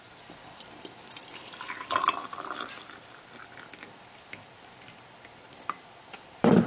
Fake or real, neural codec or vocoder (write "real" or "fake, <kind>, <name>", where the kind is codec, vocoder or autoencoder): fake, vocoder, BigVGAN v2